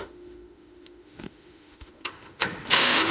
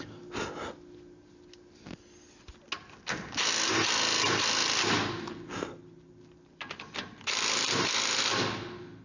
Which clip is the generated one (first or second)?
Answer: first